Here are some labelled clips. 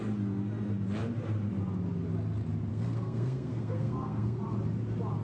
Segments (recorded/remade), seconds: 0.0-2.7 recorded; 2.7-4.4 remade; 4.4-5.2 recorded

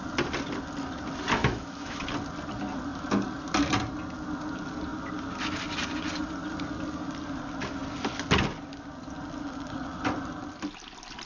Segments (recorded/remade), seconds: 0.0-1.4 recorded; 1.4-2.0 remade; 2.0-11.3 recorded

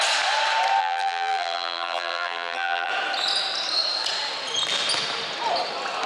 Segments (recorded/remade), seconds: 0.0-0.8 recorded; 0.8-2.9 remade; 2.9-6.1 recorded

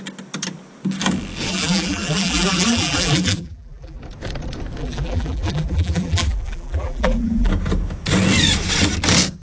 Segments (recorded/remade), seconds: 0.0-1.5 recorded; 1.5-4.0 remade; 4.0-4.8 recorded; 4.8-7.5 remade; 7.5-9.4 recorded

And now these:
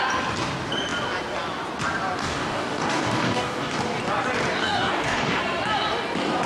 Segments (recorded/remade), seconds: 0.0-2.2 recorded; 2.2-3.8 remade; 3.8-4.6 recorded; 4.6-5.4 remade; 5.4-6.5 recorded